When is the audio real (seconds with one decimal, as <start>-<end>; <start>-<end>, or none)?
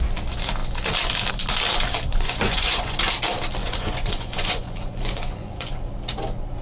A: 0.0-2.1; 3.1-3.6; 5.8-6.6